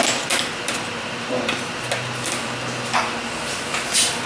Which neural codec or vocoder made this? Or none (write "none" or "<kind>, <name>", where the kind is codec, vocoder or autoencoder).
none